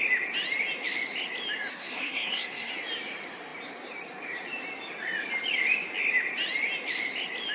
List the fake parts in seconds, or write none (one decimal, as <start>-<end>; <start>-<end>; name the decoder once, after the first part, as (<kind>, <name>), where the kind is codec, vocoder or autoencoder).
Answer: 1.7-2.7 (codec, SNAC)